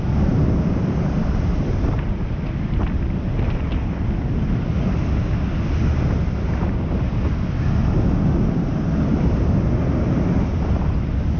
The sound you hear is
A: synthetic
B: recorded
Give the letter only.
B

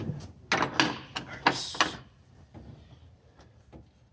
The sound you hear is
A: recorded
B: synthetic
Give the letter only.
A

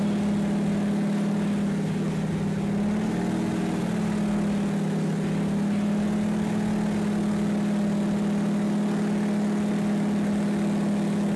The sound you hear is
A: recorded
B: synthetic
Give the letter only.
A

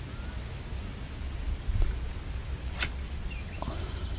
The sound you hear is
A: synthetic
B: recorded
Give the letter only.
B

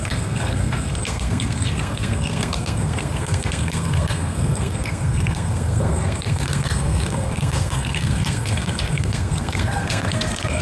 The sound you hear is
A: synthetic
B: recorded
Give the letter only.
A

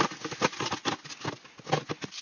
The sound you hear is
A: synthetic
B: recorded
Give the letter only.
B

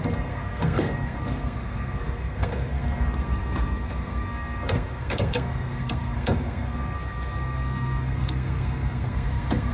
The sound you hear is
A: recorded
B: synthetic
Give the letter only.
B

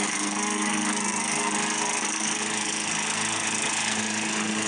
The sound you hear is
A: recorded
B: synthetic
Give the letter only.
B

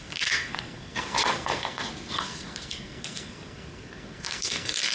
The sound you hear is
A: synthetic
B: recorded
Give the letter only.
A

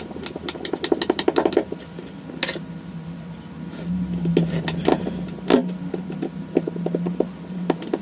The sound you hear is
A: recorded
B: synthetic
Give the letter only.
A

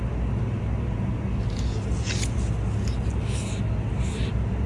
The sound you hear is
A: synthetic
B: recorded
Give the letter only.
B